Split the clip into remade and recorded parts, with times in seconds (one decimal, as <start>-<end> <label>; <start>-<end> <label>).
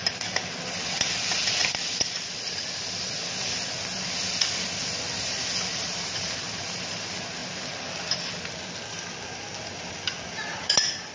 0.0-5.7 recorded; 5.7-6.9 remade; 6.9-11.1 recorded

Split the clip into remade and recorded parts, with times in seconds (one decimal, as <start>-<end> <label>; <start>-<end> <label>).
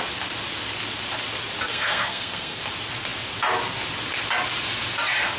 0.0-1.7 recorded; 1.7-2.6 remade; 2.6-5.4 recorded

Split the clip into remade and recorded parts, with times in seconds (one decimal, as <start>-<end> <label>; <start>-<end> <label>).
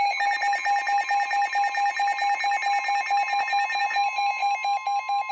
0.0-5.3 recorded